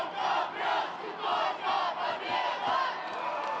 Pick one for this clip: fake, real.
real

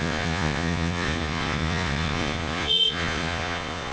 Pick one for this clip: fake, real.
fake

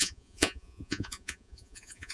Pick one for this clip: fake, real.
fake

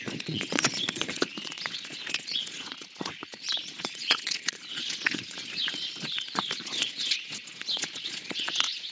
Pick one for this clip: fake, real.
fake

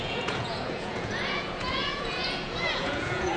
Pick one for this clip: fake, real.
fake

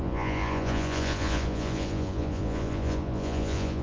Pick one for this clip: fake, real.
fake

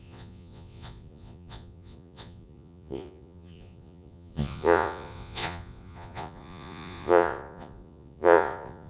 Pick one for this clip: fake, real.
fake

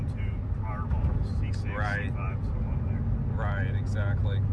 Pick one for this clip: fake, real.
real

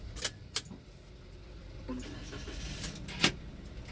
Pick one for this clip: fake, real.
real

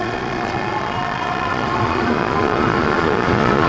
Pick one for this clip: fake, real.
fake